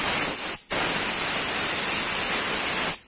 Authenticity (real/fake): real